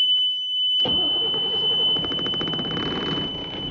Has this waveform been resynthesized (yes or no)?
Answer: no